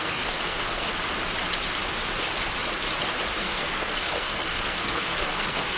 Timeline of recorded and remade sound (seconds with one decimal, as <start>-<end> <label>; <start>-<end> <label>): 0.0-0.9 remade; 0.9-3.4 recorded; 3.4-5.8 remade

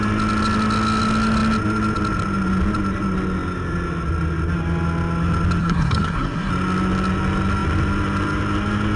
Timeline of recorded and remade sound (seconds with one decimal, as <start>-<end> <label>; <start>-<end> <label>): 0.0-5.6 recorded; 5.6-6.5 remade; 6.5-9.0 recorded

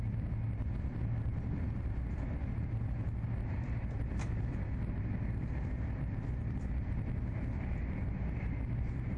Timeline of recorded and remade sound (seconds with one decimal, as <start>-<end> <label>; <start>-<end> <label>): 0.0-9.2 recorded